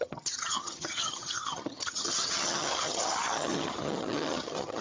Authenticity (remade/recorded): remade